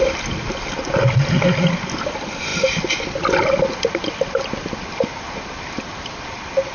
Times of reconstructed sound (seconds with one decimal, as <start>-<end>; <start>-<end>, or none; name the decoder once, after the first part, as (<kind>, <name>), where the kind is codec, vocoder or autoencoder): none